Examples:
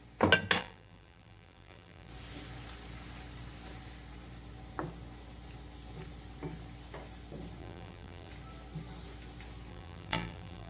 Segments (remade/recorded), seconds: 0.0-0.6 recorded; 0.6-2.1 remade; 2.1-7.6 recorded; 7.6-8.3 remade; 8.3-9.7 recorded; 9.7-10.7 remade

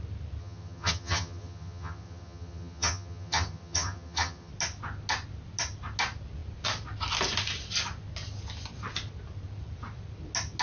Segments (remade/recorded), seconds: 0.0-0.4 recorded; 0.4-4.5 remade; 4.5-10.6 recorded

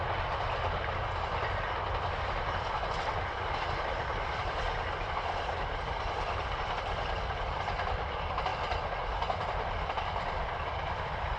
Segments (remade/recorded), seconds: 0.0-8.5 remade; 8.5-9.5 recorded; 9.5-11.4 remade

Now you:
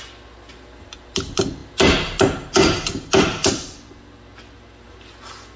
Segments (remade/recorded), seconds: 0.0-5.6 recorded

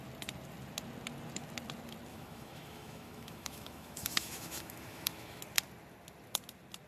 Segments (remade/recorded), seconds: 0.0-2.1 recorded; 2.1-5.4 remade; 5.4-6.9 recorded

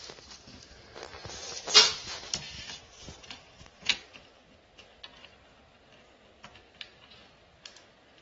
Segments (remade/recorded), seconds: 0.0-3.9 recorded; 3.9-4.4 remade; 4.4-8.2 recorded

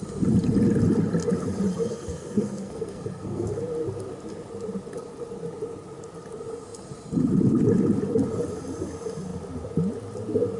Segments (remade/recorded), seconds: 0.0-1.9 recorded; 1.9-3.6 remade; 3.6-10.6 recorded